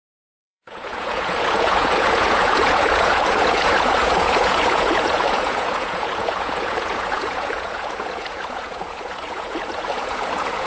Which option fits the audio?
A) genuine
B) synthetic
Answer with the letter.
B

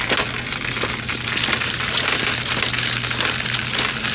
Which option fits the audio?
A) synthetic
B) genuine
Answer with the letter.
B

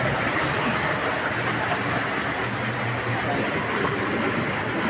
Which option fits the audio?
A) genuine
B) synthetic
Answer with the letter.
A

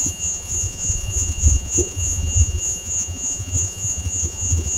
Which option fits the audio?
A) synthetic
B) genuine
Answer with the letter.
A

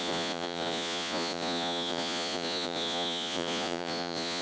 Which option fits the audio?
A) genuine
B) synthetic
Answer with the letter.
B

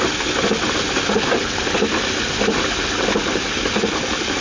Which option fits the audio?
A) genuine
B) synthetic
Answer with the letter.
A